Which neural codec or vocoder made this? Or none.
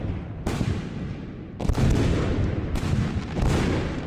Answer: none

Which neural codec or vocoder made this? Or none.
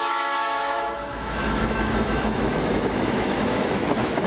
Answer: autoencoder, DAC-VAE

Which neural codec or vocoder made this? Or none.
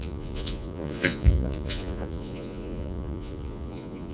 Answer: vocoder, Vocos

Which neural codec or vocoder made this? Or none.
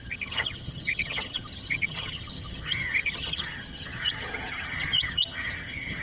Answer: vocoder, HiFi-GAN